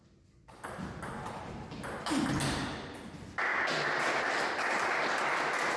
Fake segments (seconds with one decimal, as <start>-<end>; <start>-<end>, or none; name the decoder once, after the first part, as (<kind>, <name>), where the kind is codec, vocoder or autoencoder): none